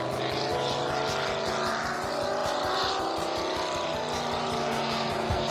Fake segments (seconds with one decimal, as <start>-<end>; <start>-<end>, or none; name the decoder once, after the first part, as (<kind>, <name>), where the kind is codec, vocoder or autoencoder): 4.6-5.5 (codec, SNAC)